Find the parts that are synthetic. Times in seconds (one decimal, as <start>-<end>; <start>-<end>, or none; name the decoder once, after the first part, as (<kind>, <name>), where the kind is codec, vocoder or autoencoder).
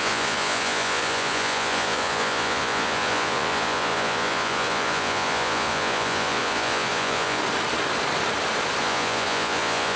0.0-7.4 (vocoder, Vocos); 8.8-10.0